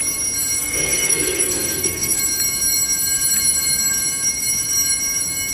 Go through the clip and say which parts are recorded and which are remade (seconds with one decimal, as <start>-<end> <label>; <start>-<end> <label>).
0.0-0.6 recorded; 0.6-2.2 remade; 2.2-5.5 recorded